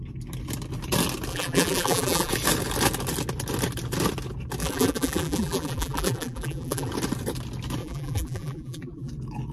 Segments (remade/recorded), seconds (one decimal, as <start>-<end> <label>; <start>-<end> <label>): 0.0-1.3 recorded; 1.3-2.3 remade; 2.3-4.6 recorded; 4.6-6.9 remade; 6.9-7.8 recorded; 7.8-9.1 remade; 9.1-9.5 recorded